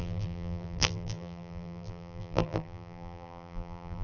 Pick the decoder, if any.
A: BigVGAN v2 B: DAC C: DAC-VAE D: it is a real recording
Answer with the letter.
A